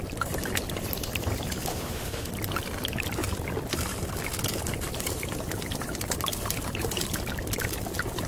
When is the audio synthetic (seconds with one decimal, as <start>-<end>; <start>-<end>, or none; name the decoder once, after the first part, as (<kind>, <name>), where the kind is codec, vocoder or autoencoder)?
1.7-2.3 (autoencoder, DAC-VAE)